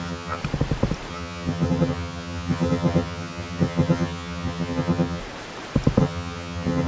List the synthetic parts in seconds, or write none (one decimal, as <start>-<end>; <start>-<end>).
0.0-0.4; 1.1-5.2; 6.0-6.9